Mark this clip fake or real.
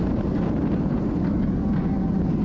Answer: real